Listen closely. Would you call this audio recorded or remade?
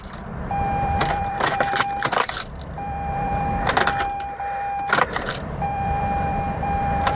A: remade